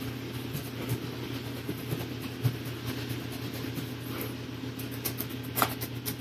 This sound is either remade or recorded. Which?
recorded